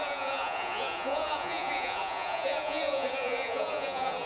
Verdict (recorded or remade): remade